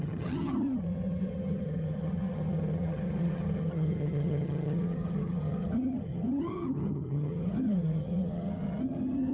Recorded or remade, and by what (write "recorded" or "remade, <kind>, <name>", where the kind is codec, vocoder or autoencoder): remade, vocoder, HiFi-GAN